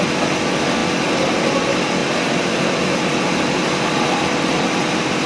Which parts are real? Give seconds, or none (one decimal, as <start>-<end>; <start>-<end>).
0.0-5.3